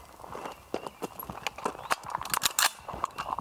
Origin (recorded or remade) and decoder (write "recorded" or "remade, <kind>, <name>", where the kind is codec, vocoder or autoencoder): recorded